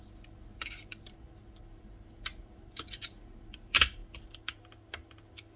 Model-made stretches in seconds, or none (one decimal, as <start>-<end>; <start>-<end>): 0.0-4.0